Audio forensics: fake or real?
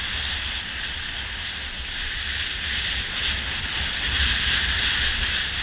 real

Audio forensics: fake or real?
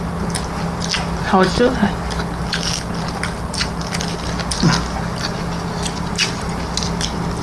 real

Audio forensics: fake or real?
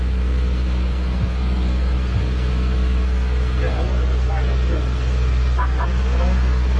fake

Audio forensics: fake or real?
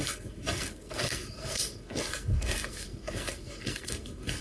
fake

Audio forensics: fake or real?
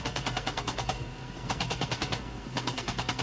fake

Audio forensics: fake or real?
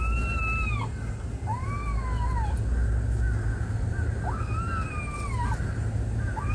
real